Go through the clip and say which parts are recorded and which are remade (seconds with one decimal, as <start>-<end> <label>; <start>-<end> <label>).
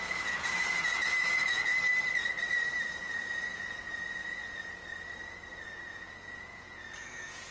0.0-1.7 remade; 1.7-2.9 recorded; 2.9-4.8 remade; 4.8-5.7 recorded; 5.7-7.5 remade